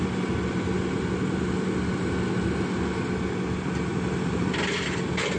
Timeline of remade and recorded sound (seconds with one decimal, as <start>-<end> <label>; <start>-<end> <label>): 0.0-5.4 recorded